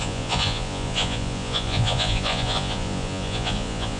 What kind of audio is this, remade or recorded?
remade